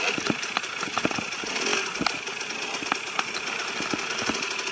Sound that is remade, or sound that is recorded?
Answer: recorded